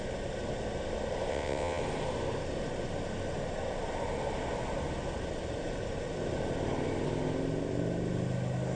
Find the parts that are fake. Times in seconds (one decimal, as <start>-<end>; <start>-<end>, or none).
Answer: 1.3-1.8